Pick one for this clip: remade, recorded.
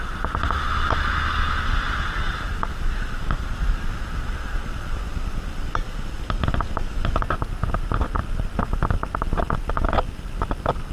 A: recorded